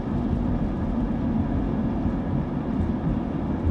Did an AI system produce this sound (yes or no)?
yes